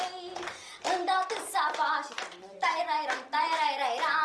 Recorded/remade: recorded